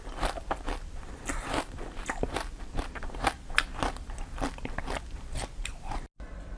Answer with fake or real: fake